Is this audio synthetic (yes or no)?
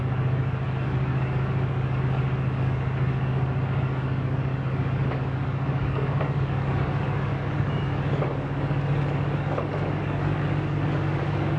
yes